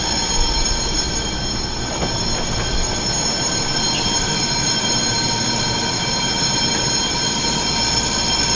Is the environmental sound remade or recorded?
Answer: recorded